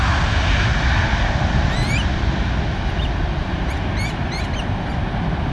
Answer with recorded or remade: recorded